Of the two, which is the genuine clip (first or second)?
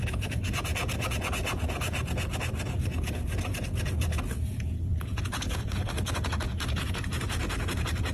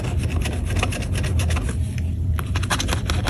second